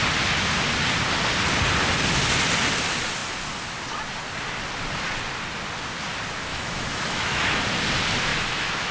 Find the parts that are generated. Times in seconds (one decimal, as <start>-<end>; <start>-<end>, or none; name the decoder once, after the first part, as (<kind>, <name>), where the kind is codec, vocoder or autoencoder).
6.5-7.6 (autoencoder, DAC-VAE); 8.3-8.9